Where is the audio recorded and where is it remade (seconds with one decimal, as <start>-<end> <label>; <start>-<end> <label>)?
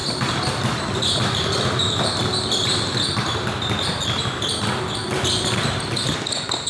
0.0-6.7 recorded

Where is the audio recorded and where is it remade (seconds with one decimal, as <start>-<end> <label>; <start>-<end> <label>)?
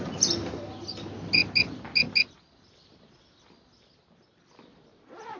0.0-5.4 recorded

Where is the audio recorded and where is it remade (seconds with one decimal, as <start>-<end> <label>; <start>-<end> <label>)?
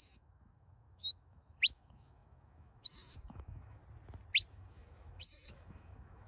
0.0-3.8 remade; 3.8-4.5 recorded; 4.5-6.3 remade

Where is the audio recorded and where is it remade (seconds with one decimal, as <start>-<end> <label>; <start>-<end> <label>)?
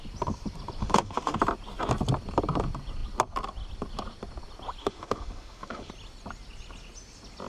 0.0-0.8 recorded; 0.8-1.4 remade; 1.4-4.8 recorded; 4.8-5.9 remade; 5.9-7.5 recorded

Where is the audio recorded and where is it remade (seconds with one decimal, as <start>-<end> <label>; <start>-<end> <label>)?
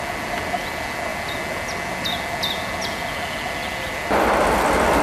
0.0-5.0 recorded